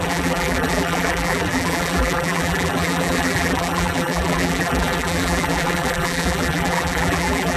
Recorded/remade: remade